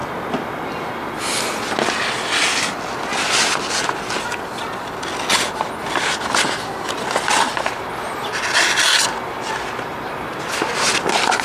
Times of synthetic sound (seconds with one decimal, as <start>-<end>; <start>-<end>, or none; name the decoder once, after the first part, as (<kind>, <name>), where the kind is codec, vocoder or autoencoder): none